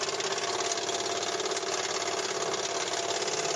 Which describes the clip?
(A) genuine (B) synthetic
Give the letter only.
A